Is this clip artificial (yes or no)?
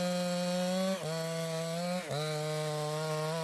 no